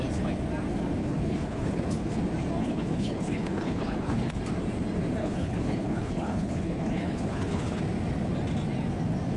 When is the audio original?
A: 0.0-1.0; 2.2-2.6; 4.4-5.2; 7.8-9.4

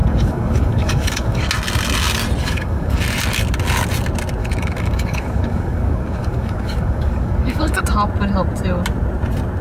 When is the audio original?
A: 1.5-2.4; 3.0-4.4; 7.8-9.6

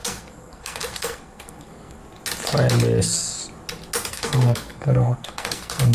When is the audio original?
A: 2.0-3.0; 3.4-4.1

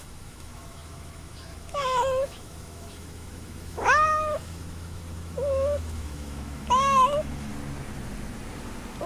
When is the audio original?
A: 7.5-9.1